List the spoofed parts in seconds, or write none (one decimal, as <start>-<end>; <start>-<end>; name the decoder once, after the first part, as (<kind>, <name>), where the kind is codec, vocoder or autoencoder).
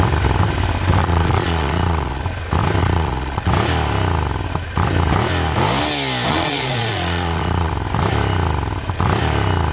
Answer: 1.0-2.2 (vocoder, Vocos); 2.8-3.5; 6.3-7.7